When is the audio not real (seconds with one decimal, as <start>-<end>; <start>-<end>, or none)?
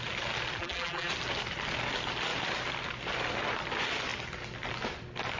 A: 0.6-1.1